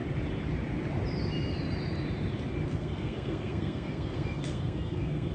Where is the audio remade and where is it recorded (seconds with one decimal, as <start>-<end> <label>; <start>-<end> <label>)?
0.0-2.7 recorded; 2.7-5.3 remade